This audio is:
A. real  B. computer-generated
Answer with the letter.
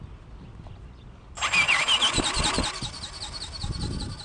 A